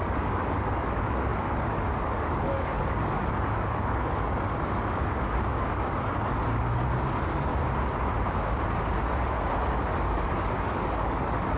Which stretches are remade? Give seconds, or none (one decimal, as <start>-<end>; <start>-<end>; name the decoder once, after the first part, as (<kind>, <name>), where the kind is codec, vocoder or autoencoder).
0.0-7.5 (codec, DAC); 9.7-11.6